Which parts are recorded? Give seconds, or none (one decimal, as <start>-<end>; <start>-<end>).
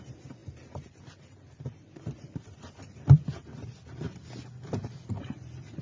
0.0-5.8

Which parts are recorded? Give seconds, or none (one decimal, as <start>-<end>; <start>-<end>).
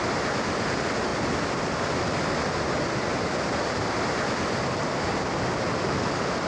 0.0-6.5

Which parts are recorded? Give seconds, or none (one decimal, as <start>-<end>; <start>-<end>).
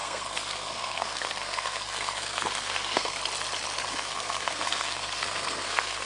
3.2-3.9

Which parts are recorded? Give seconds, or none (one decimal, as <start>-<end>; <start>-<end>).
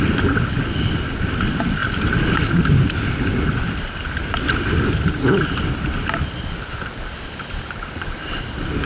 0.0-8.9